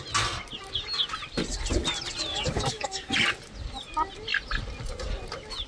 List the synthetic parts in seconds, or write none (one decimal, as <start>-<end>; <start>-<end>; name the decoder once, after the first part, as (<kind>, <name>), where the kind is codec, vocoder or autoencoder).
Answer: 2.3-3.1 (codec, DAC)